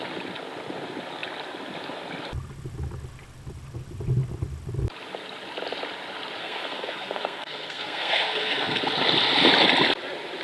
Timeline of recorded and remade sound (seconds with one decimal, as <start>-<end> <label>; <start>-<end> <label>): 0.0-6.4 recorded; 6.4-8.8 remade; 8.8-10.4 recorded